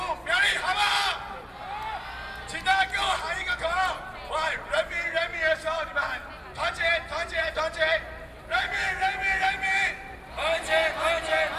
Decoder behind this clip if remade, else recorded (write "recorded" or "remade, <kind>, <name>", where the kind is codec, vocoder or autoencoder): recorded